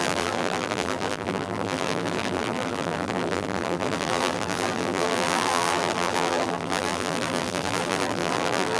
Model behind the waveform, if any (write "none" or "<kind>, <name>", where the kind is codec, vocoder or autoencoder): vocoder, BigVGAN v2